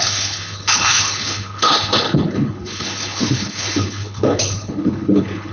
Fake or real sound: fake